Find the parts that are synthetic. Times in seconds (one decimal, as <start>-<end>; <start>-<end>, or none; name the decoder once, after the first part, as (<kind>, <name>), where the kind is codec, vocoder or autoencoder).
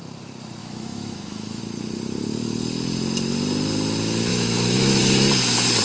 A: 0.6-1.6 (autoencoder, DAC-VAE); 4.3-5.0